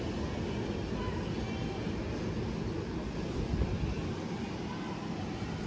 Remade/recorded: recorded